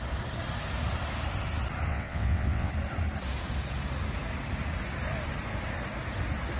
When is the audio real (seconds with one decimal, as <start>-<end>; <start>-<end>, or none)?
0.0-1.9; 2.7-6.6